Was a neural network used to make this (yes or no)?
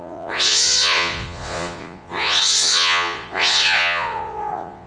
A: yes